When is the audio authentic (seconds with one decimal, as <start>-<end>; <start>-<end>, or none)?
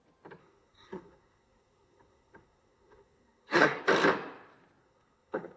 0.0-0.4; 3.8-4.8